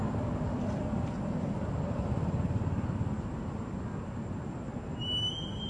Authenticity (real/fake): real